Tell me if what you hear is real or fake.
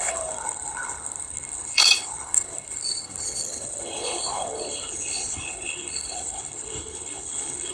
fake